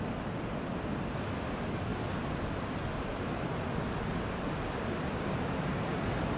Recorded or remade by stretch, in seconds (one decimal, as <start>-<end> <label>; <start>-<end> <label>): 0.0-6.4 recorded